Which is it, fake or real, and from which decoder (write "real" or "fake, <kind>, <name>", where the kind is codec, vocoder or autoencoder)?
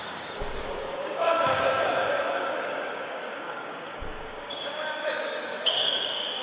fake, codec, DAC